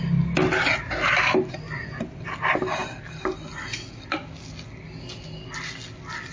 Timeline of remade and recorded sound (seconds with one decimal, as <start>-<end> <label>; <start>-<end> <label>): 0.0-6.3 recorded